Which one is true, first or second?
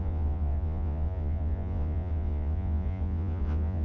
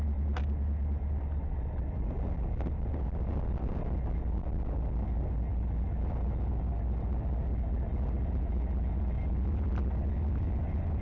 second